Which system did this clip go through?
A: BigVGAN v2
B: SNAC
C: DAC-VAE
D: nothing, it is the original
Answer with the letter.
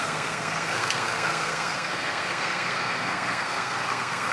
B